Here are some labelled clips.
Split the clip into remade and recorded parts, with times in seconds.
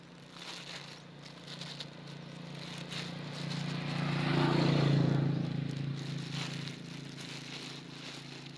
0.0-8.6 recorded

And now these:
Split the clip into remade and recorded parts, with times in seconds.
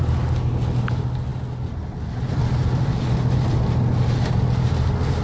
0.0-5.2 recorded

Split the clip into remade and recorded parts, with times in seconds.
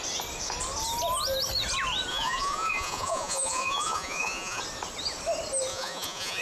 0.0-2.1 recorded; 2.1-4.6 remade; 4.6-5.7 recorded; 5.7-6.4 remade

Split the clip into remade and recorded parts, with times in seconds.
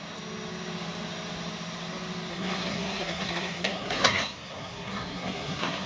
0.0-2.3 recorded; 2.3-5.9 remade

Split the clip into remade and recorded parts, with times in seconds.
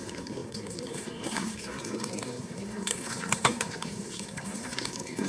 0.0-5.3 remade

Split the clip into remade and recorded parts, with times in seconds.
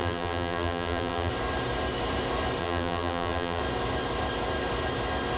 0.0-1.3 remade; 1.3-2.6 recorded; 2.6-3.6 remade; 3.6-5.4 recorded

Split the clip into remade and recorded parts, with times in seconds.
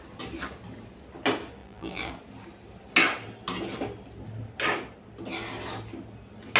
0.0-1.6 recorded; 1.6-2.1 remade; 2.1-6.6 recorded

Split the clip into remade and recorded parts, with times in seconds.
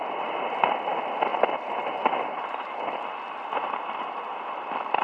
0.0-5.0 recorded